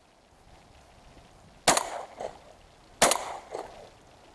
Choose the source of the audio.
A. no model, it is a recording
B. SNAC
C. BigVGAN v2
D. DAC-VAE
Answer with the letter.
A